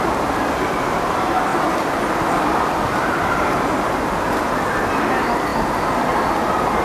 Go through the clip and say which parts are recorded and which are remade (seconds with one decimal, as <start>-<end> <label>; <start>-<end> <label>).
0.0-5.5 remade; 5.5-6.8 recorded